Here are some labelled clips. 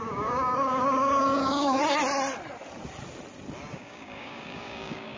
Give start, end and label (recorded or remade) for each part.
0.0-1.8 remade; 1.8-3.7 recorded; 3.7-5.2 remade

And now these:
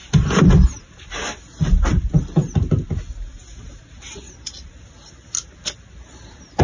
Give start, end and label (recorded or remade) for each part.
0.0-6.6 recorded

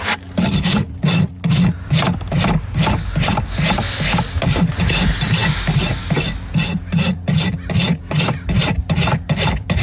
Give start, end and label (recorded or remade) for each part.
0.0-9.8 recorded

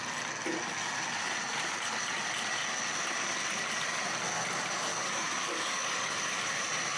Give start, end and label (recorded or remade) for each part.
0.0-4.9 recorded; 4.9-6.6 remade; 6.6-7.0 recorded

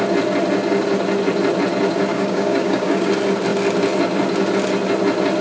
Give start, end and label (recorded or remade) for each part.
0.0-2.1 recorded; 2.1-3.1 remade; 3.1-5.4 recorded

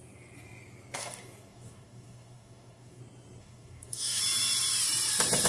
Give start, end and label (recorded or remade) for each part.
0.0-1.0 recorded; 1.0-3.0 remade; 3.0-3.4 recorded; 3.4-4.2 remade; 4.2-5.5 recorded

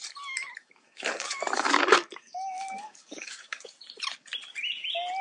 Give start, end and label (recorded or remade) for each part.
0.0-0.6 recorded; 0.6-3.7 remade; 3.7-5.2 recorded